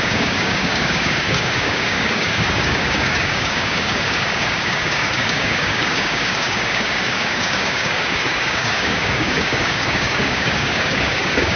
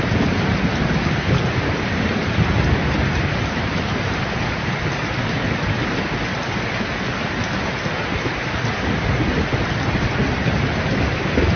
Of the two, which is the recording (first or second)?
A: second